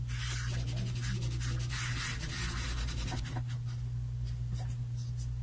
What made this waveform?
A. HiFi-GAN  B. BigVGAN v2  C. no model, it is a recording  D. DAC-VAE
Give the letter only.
C